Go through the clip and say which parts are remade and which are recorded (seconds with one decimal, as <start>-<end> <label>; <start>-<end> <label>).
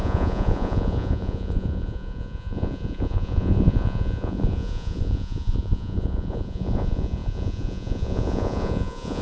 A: 0.0-9.2 remade